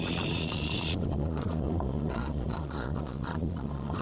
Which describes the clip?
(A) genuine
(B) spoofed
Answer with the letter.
B